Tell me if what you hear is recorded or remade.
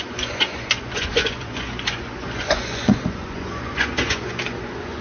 remade